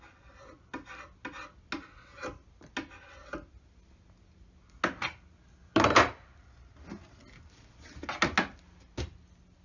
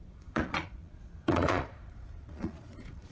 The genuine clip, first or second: first